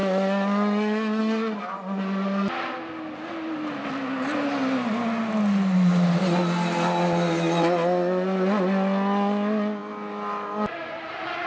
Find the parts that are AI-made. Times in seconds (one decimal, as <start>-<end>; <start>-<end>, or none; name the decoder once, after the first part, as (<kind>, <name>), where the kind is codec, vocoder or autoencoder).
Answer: 0.0-1.2 (autoencoder, DAC-VAE)